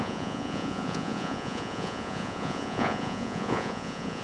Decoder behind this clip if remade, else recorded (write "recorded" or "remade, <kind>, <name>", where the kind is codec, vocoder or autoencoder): remade, vocoder, Vocos